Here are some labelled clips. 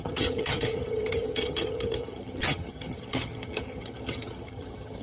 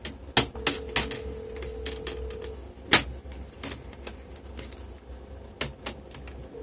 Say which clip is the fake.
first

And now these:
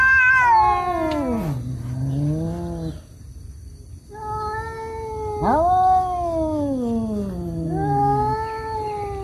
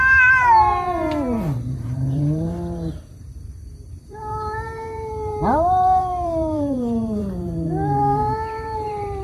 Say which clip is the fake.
second